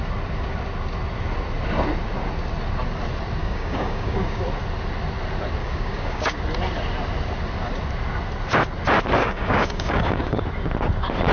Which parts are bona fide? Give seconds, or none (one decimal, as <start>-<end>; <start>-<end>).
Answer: 0.0-3.4; 4.4-5.6; 6.4-9.2; 10.4-11.3